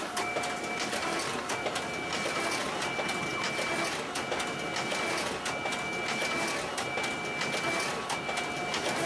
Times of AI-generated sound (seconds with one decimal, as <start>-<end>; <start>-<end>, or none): none